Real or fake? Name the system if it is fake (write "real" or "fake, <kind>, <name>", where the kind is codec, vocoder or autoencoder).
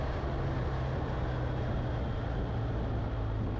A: real